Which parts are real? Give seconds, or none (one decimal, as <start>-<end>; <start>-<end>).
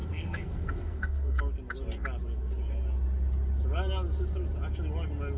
1.4-5.4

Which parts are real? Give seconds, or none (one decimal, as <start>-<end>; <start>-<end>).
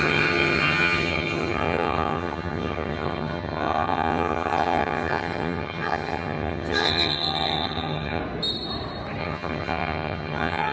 8.2-9.2